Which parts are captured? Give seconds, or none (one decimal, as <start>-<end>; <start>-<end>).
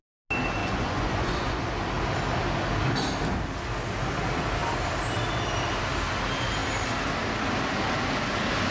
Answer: 0.0-0.6; 1.6-8.7